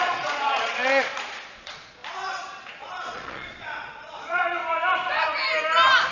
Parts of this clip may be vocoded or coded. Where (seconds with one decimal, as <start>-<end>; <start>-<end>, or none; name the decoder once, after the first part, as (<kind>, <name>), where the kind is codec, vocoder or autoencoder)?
0.0-2.0 (vocoder, Vocos); 2.7-4.6